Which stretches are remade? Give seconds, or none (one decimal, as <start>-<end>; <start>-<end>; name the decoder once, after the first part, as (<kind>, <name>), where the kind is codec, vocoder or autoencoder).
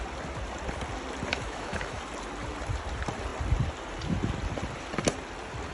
1.3-2.0 (autoencoder, DAC-VAE)